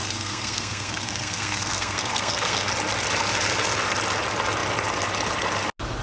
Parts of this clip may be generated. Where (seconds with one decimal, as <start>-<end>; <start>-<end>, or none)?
0.0-2.7